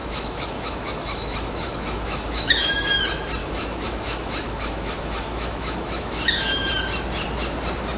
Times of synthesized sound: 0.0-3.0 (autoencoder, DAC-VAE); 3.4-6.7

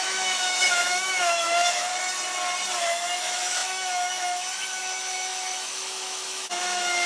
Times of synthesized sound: 0.0-1.9 (autoencoder, DAC-VAE); 2.8-7.1

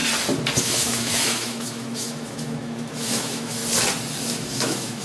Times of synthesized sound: 0.6-3.6 (autoencoder, DAC-VAE); 4.3-5.0

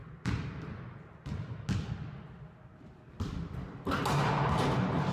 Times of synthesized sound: none